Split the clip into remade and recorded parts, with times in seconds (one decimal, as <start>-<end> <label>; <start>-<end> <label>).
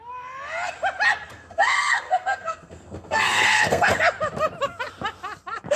0.0-1.1 recorded; 1.1-3.9 remade; 3.9-5.8 recorded